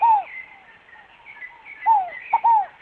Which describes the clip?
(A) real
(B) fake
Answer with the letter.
A